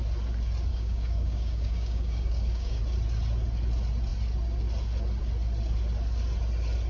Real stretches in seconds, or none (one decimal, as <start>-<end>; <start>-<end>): 0.0-0.7; 2.8-6.9